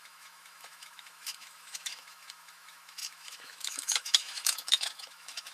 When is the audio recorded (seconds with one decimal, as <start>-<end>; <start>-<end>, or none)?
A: none

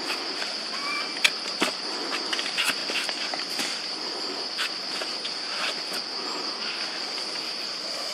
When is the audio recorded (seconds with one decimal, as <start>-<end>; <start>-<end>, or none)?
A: 0.0-8.1

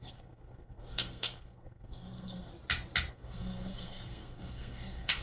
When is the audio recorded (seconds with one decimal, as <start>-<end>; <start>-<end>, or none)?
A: 2.5-3.1

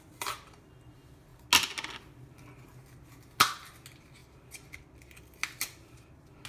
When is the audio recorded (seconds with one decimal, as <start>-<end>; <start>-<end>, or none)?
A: 0.0-6.5

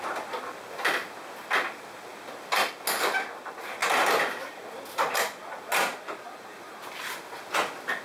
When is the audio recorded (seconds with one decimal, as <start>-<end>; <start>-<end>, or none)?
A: 0.0-8.0

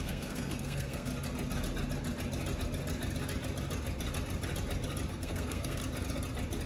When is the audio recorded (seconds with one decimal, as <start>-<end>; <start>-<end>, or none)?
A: 1.1-5.1; 5.8-6.7

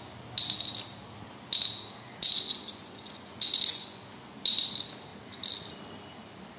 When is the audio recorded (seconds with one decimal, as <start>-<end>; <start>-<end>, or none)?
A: 0.0-2.1; 4.0-6.6